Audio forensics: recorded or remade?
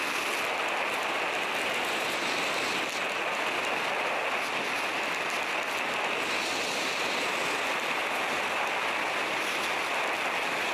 recorded